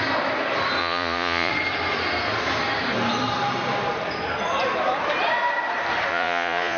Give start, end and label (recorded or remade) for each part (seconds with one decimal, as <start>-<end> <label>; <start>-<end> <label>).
0.0-0.8 recorded; 0.8-1.5 remade; 1.5-6.1 recorded; 6.1-6.8 remade